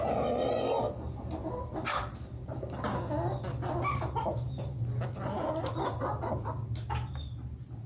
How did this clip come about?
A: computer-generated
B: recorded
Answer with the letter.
B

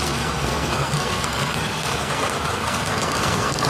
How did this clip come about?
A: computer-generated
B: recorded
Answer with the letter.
A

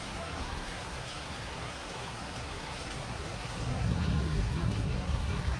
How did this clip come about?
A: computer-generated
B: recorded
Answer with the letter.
A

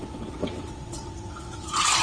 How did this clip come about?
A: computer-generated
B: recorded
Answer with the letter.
A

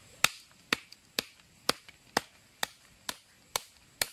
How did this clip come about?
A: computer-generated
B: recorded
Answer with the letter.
B